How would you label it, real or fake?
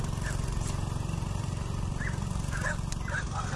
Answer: real